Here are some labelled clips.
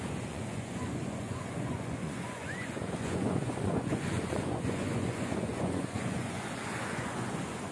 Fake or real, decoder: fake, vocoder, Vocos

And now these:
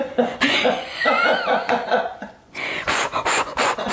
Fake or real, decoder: fake, vocoder, Vocos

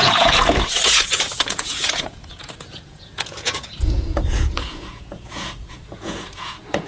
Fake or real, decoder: fake, vocoder, Vocos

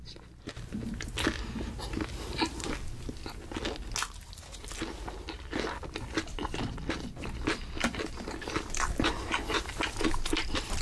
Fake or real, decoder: real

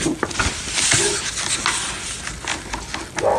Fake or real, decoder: real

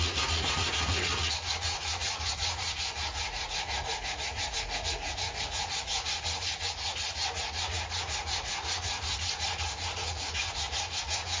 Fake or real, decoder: fake, vocoder, Vocos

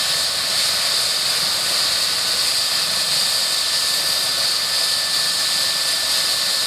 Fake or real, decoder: real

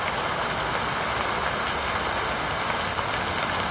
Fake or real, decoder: real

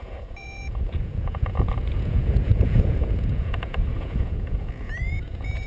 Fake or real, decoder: fake, vocoder, Vocos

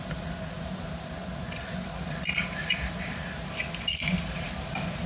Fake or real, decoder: real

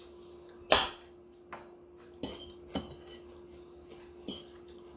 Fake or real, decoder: real